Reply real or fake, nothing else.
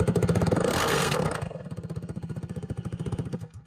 fake